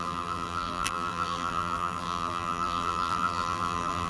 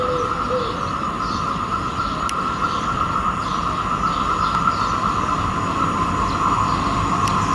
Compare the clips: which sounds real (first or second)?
second